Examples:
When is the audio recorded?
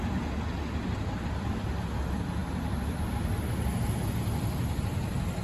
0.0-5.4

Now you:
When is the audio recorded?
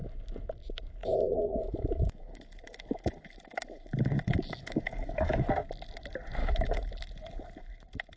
0.0-1.0; 5.5-6.4; 6.9-8.2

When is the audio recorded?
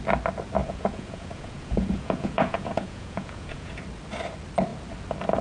0.0-0.6; 3.8-5.4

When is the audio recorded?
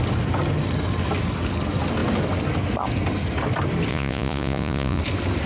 0.0-3.9; 5.0-5.5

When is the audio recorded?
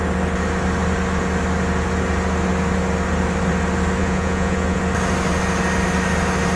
0.0-4.0; 4.8-6.6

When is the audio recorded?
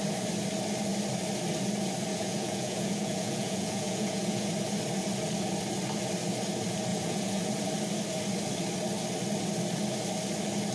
0.0-2.1; 4.5-6.9; 7.5-10.7